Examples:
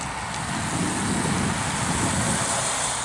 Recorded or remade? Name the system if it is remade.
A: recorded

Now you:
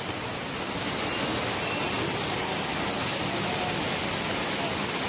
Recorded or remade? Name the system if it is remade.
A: recorded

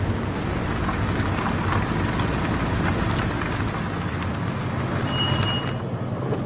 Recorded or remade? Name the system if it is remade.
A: recorded